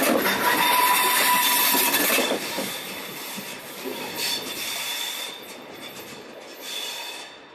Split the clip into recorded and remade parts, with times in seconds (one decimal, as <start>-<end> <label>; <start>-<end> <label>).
0.0-2.2 recorded; 2.2-2.9 remade; 2.9-3.5 recorded; 3.5-4.1 remade; 4.1-7.5 recorded